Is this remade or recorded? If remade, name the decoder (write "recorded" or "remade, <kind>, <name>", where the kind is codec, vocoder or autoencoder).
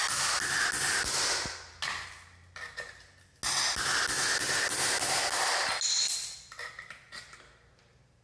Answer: recorded